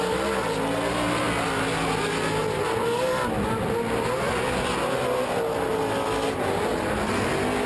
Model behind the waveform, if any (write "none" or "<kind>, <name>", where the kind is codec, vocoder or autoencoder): none